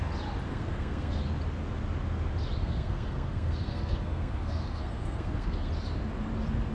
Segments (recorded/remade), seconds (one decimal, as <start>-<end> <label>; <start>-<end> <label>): 0.0-0.5 recorded; 0.5-1.2 remade; 1.2-2.6 recorded; 2.6-5.7 remade; 5.7-6.7 recorded